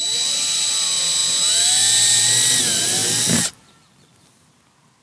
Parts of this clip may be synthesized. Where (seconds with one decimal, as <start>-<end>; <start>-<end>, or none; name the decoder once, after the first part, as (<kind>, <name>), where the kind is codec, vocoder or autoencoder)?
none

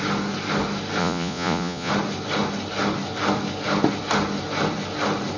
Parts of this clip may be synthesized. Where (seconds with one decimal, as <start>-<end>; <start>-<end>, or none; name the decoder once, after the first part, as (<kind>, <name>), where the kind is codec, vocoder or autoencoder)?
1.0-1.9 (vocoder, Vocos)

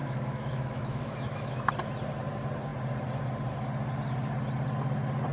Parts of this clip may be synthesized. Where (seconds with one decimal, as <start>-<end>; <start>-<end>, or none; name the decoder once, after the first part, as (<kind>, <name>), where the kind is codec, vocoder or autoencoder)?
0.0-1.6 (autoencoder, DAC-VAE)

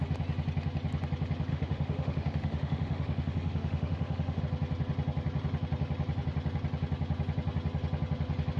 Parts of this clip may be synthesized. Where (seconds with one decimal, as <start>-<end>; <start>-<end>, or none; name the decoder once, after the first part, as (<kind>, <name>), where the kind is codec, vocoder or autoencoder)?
1.5-4.4 (autoencoder, DAC-VAE)